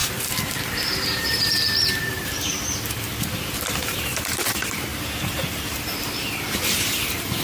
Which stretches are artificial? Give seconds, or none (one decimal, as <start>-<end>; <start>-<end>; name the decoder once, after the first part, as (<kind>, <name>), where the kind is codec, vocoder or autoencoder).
0.0-2.5 (vocoder, BigVGAN v2); 3.3-7.4